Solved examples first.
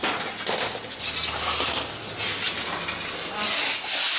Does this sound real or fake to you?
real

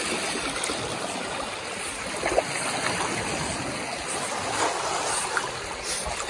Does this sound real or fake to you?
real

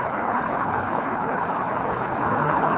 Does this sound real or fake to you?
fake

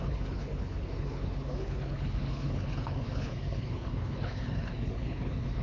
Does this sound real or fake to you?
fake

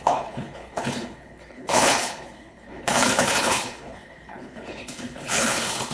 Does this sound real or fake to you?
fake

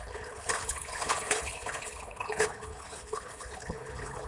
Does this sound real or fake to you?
fake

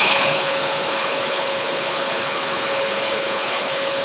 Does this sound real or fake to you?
fake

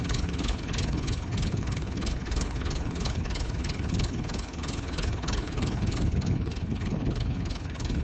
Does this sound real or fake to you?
fake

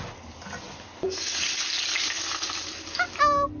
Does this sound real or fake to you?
real